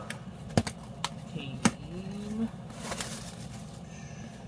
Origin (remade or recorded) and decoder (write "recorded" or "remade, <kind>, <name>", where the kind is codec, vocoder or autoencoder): recorded